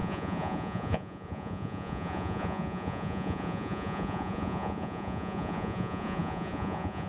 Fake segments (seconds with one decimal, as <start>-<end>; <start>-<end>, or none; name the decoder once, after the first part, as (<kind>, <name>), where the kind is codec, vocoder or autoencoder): 0.0-7.1 (vocoder, Vocos)